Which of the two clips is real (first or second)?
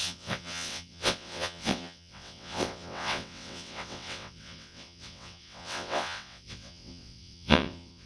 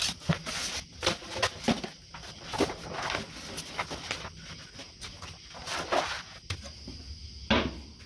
second